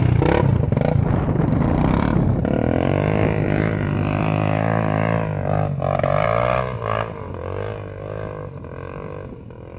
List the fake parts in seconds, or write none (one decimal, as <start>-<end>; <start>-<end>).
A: none

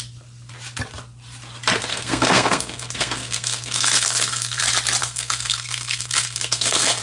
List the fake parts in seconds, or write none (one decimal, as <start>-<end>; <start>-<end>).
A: 1.9-4.6; 5.0-7.0

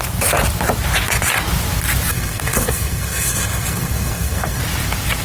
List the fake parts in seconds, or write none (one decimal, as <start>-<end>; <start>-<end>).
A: 2.1-4.6

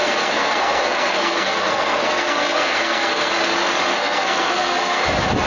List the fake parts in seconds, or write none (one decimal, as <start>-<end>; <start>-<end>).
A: 0.0-3.3; 3.9-5.0

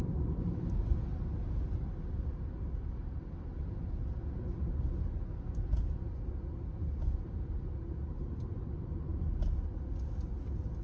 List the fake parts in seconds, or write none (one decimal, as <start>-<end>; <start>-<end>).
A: none